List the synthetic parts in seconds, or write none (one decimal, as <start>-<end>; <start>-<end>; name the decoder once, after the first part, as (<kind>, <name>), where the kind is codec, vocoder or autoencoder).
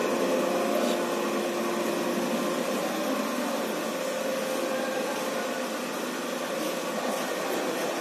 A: none